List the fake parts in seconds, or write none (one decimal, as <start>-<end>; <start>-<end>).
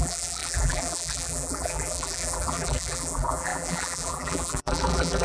0.0-5.2